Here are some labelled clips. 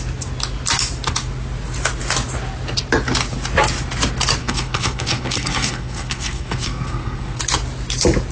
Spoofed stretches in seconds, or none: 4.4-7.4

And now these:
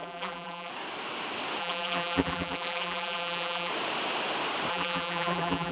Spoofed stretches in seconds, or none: 0.0-0.7; 1.6-3.7; 4.7-5.7

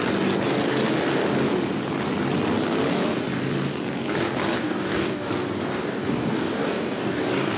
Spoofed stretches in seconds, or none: 4.6-5.3; 5.7-7.6

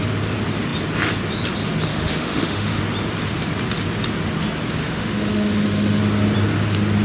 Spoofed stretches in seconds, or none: 1.9-2.8; 4.8-6.0

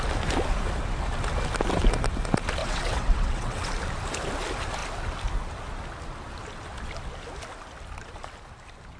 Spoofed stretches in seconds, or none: 2.6-3.7

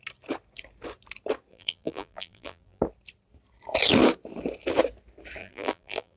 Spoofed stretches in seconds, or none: 1.5-2.8; 5.4-6.2